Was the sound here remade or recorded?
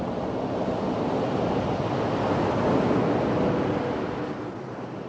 recorded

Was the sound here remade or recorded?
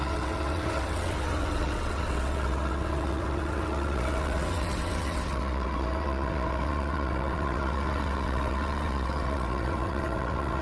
remade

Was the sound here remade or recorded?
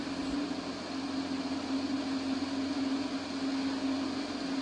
recorded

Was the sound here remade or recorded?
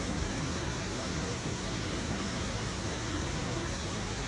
remade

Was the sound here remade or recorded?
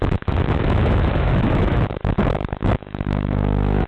remade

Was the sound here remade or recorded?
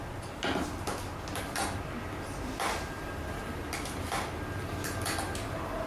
recorded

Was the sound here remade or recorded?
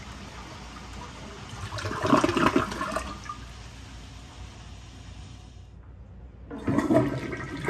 recorded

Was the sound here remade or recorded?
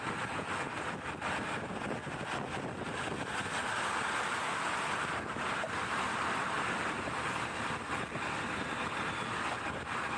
recorded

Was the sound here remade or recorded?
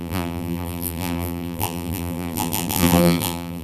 remade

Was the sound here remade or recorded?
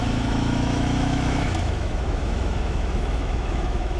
remade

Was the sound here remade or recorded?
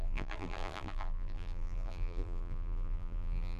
remade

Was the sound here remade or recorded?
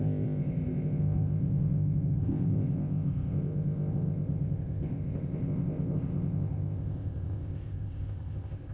remade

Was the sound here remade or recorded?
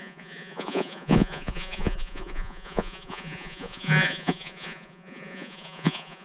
remade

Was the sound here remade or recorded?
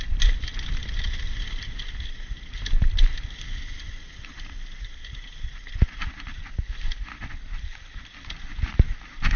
remade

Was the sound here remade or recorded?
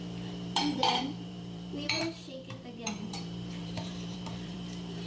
remade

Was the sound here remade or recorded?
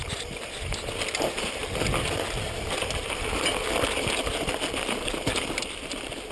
recorded